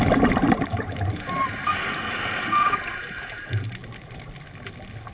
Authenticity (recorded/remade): recorded